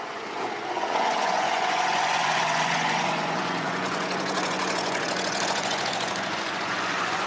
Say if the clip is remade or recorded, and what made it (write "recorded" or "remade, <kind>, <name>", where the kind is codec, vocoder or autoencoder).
remade, vocoder, Vocos